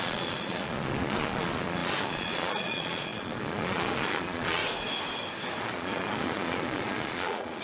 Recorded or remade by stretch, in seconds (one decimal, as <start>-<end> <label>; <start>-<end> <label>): 0.0-4.6 remade; 4.6-5.6 recorded; 5.6-7.6 remade